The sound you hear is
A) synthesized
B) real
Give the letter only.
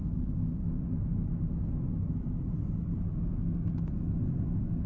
B